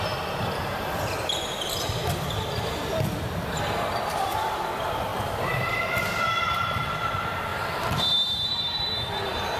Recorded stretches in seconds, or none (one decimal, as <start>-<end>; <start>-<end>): none